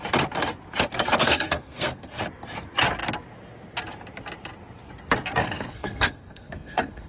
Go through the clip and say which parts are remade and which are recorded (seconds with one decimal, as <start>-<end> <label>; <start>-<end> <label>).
0.0-1.2 recorded; 1.2-2.2 remade; 2.2-5.4 recorded; 5.4-7.1 remade